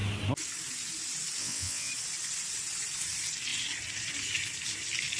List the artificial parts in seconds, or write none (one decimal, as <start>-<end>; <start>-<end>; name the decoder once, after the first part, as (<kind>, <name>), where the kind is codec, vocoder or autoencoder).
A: 1.4-1.9 (vocoder, WaveNeXt)

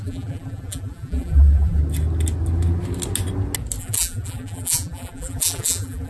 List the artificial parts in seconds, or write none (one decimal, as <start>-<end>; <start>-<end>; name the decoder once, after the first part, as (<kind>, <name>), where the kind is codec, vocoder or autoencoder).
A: 0.0-1.8 (vocoder, BigVGAN v2); 3.8-6.1

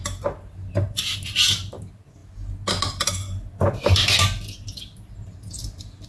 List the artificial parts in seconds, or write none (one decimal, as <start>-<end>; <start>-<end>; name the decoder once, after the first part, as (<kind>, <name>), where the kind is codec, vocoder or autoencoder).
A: none

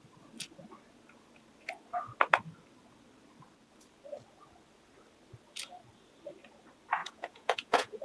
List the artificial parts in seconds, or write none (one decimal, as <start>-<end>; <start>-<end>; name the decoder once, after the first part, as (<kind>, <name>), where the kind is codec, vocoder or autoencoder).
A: 7.0-8.0 (vocoder, Vocos)

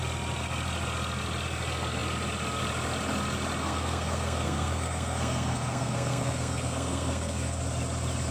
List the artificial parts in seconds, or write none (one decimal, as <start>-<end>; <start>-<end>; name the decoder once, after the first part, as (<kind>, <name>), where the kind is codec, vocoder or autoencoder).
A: 3.6-7.6 (codec, SNAC)

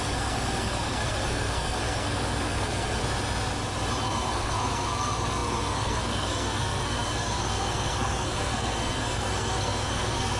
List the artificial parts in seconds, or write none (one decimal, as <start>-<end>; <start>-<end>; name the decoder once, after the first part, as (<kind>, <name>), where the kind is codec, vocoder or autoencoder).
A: 0.0-3.0 (codec, SNAC); 4.0-10.4

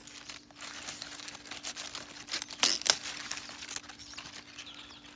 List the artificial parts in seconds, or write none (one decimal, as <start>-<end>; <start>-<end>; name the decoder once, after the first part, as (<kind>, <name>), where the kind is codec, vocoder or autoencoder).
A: none

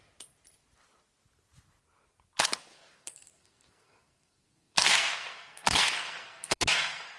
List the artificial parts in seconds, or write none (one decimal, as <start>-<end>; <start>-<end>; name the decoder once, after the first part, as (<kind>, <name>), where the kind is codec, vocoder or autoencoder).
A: 2.7-7.2 (codec, SNAC)